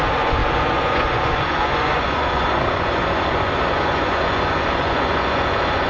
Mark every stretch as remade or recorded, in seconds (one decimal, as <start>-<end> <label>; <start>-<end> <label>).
0.0-5.9 remade